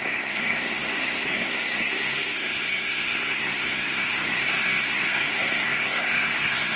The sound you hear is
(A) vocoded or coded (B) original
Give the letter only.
A